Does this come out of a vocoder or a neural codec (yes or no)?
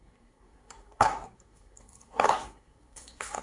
yes